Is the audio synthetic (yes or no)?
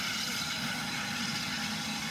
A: no